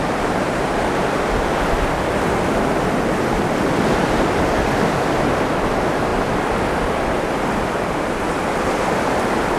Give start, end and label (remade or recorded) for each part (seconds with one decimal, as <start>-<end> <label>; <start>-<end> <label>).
0.0-9.6 recorded

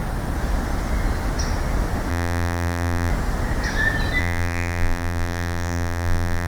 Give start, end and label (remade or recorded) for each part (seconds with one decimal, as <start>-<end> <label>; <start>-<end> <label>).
0.0-2.1 recorded; 2.1-3.1 remade; 3.1-4.2 recorded; 4.2-6.5 remade

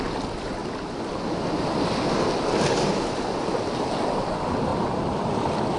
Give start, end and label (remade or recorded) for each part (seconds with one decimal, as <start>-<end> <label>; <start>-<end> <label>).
0.0-4.7 recorded; 4.7-5.2 remade; 5.2-5.8 recorded

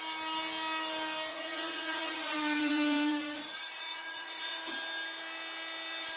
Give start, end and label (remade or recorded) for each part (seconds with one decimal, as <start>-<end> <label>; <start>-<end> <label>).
0.0-1.3 recorded; 1.3-4.6 remade; 4.6-6.2 recorded

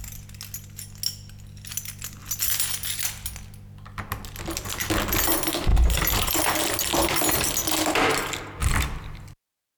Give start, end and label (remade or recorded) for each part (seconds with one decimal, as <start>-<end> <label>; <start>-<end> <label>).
0.0-5.7 recorded; 5.7-6.4 remade; 6.4-9.8 recorded

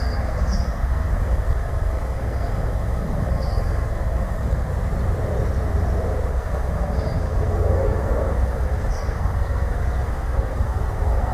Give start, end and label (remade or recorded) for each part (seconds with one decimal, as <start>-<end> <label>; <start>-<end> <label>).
0.0-4.7 remade; 4.7-6.3 recorded; 6.3-11.3 remade